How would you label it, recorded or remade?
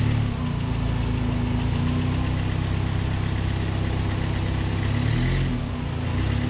recorded